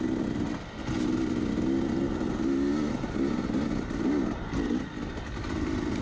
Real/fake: real